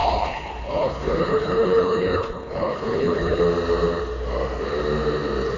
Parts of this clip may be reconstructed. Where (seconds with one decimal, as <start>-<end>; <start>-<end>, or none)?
0.0-3.4